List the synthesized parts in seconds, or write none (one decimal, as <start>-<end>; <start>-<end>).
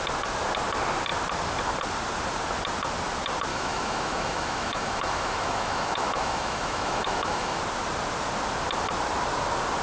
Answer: 3.5-7.6